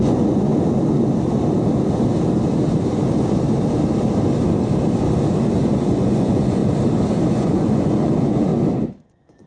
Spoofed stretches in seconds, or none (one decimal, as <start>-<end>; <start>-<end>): 0.0-0.5; 5.7-6.6; 7.3-8.5; 9.1-9.5